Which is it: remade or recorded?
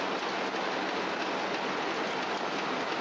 recorded